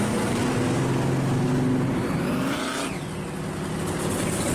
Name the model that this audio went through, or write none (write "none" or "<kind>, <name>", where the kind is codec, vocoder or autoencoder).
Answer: none